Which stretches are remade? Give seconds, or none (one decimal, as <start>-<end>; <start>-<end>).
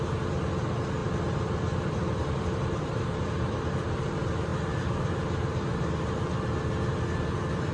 1.0-4.1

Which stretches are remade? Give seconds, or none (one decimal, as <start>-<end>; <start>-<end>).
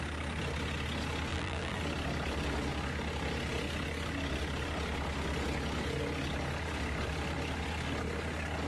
1.3-1.8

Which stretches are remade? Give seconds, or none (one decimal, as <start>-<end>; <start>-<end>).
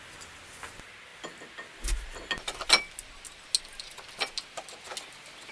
none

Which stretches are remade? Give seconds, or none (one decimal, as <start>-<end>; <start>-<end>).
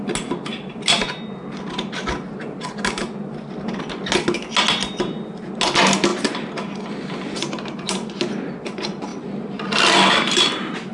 none